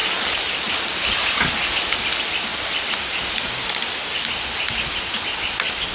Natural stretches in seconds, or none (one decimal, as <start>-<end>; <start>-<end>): 0.7-2.5; 4.1-5.9